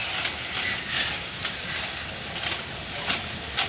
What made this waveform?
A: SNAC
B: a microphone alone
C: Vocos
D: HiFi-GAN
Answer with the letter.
B